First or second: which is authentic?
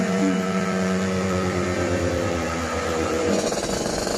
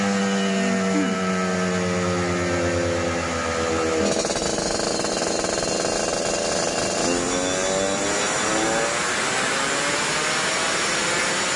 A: second